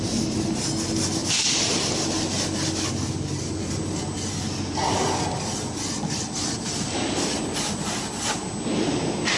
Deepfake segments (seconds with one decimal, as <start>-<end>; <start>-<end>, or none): none